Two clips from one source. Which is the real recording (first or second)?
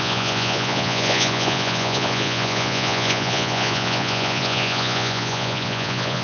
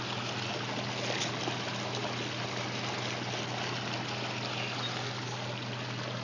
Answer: second